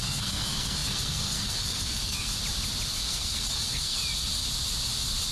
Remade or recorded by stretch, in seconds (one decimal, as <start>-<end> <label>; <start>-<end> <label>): 0.0-2.3 remade; 2.3-2.9 recorded; 2.9-4.0 remade; 4.0-5.3 recorded